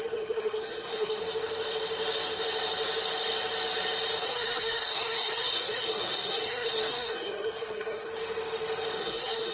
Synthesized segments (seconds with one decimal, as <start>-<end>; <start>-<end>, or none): 0.0-1.2; 4.2-8.1; 9.0-9.5